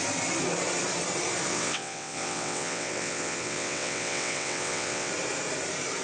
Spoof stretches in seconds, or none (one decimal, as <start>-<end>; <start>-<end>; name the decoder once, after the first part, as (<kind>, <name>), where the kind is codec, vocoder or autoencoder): 1.5-5.1 (vocoder, WaveNeXt)

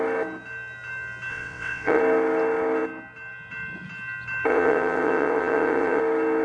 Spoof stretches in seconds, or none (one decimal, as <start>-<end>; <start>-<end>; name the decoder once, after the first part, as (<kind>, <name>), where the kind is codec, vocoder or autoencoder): 1.3-2.0 (vocoder, WaveNeXt); 4.5-6.0